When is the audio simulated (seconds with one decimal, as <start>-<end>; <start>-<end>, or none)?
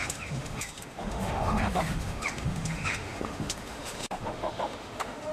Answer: 0.0-5.3